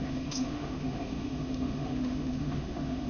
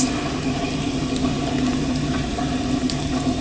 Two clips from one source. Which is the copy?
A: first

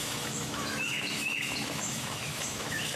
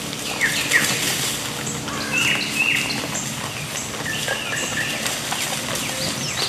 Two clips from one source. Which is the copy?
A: first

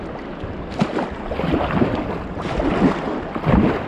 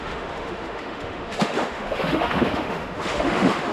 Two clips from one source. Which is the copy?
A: second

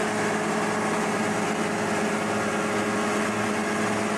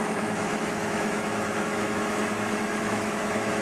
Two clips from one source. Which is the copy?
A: second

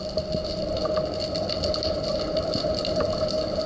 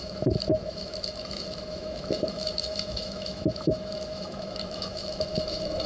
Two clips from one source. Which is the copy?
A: second